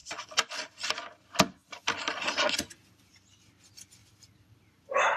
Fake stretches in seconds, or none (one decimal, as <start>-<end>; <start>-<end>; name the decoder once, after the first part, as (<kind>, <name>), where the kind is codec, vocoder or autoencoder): 0.0-0.9 (vocoder, BigVGAN v2); 1.6-3.1; 4.0-5.2